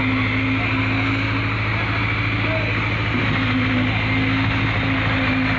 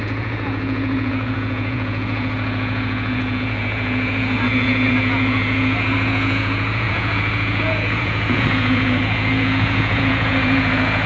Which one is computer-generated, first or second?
second